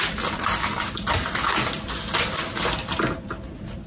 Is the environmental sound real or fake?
real